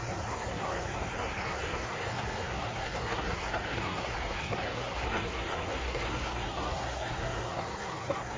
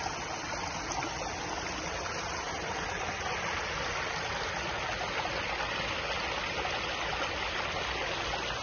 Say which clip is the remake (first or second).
first